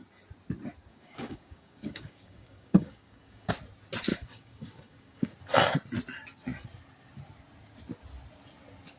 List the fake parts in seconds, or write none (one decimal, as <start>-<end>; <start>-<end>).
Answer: 0.9-3.5; 4.1-5.3